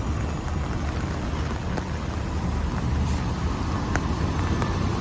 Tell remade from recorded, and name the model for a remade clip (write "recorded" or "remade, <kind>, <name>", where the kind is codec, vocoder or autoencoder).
recorded